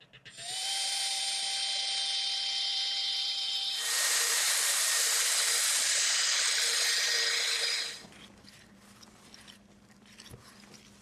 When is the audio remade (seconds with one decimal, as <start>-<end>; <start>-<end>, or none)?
0.6-1.2; 2.7-7.6